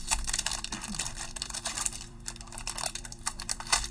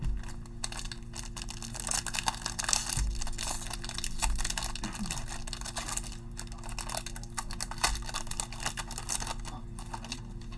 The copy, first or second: first